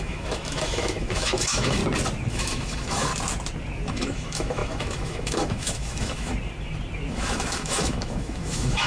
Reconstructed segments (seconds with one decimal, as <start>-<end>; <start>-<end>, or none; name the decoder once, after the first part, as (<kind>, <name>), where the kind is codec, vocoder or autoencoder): 0.0-1.8 (autoencoder, DAC-VAE); 2.3-3.1; 3.9-6.3; 7.1-8.9